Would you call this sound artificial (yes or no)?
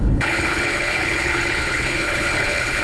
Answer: yes